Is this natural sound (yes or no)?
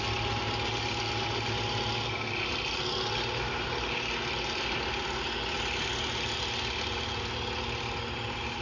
yes